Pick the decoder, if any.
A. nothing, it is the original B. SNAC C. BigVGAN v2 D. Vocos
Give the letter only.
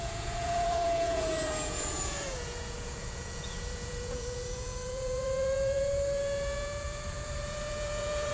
D